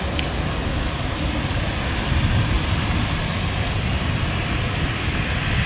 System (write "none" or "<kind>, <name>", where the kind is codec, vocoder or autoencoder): none